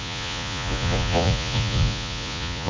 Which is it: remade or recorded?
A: remade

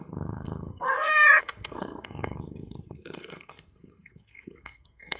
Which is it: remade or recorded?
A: remade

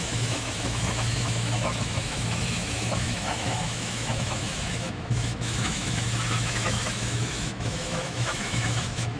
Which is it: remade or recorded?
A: remade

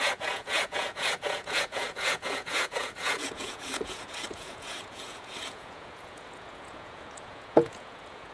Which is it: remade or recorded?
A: remade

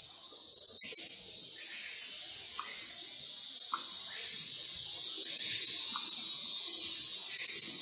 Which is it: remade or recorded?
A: recorded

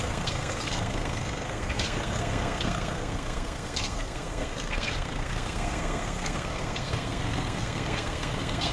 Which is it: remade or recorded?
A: remade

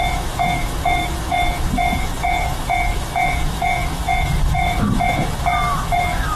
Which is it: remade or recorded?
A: remade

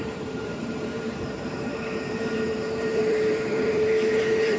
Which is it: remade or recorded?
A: remade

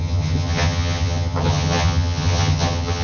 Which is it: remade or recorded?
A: remade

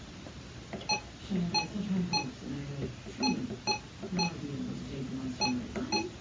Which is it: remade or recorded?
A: recorded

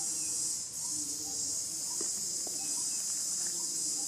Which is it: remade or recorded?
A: recorded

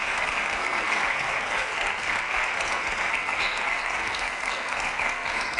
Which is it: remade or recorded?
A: remade